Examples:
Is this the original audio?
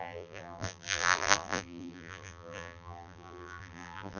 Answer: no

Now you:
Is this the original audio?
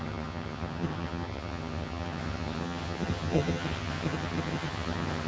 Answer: no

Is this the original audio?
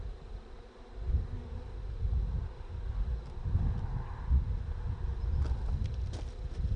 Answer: yes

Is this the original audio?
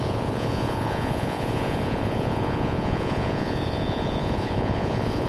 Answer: no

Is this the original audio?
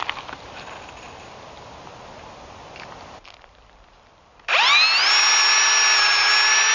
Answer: yes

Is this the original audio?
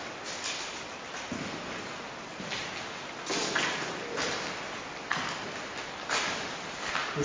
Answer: yes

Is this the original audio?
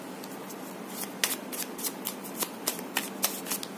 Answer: yes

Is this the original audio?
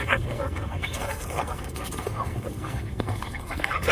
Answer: no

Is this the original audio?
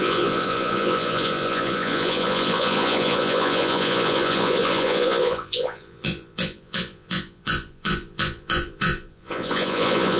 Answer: no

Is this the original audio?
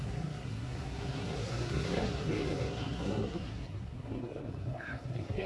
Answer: no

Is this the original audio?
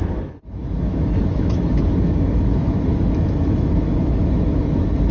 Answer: no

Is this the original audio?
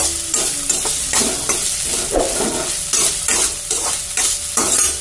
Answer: yes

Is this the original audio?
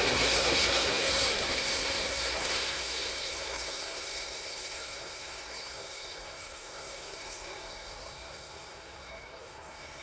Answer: no